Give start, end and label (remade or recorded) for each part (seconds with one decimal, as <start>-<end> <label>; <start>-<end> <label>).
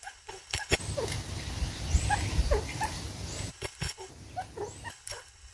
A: 0.0-0.8 remade; 0.8-3.5 recorded; 3.5-4.1 remade; 4.1-4.9 recorded; 4.9-5.5 remade